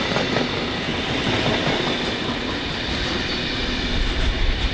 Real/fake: real